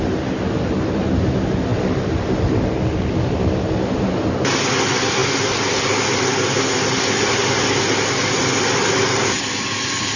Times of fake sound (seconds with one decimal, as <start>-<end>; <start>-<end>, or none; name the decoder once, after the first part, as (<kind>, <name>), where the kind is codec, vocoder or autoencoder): none